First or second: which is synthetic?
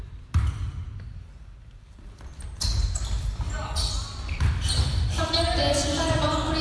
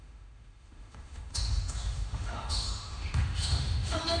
second